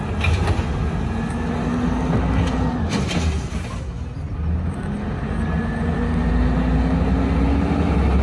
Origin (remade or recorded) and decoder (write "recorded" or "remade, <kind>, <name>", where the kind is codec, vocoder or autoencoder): recorded